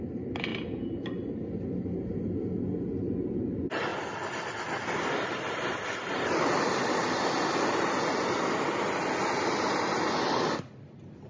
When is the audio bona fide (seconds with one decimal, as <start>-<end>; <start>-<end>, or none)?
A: 0.0-0.5; 1.6-3.9; 8.0-11.3